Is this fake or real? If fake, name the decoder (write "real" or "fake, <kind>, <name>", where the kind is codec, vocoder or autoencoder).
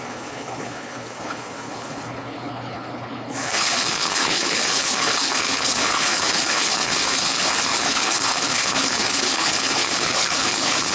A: fake, codec, HILCodec